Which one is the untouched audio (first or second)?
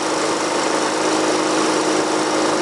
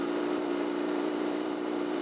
first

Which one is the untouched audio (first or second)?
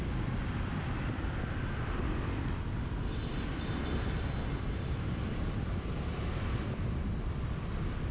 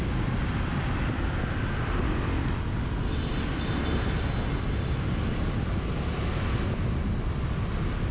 second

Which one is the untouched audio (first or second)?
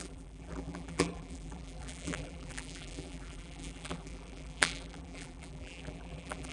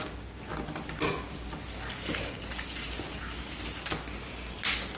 second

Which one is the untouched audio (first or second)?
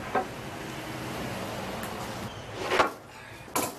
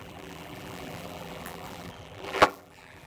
first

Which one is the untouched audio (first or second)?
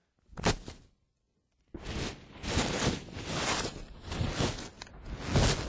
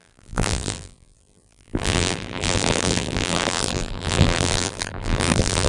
first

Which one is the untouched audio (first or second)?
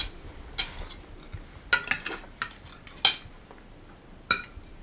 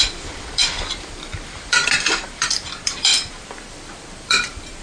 first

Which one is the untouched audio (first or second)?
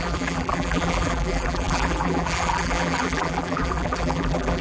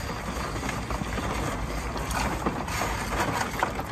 second